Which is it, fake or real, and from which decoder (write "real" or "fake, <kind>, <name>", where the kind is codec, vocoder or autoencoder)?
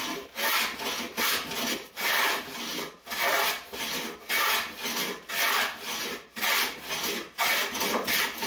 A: real